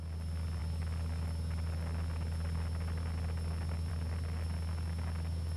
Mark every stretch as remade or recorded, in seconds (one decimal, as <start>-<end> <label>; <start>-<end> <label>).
0.0-5.6 recorded